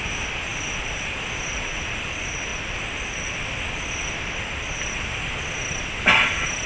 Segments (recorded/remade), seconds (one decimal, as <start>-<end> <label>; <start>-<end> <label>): 0.0-6.7 recorded